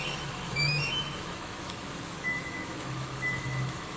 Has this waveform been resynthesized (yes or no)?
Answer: yes